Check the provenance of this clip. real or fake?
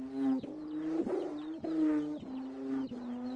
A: real